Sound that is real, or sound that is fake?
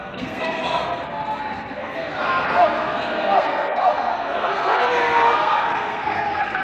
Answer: fake